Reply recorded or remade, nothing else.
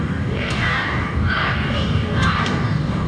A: remade